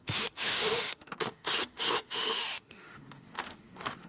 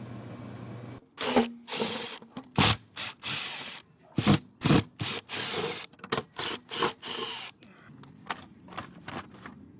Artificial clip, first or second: first